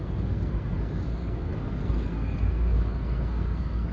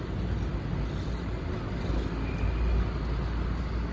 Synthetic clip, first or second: first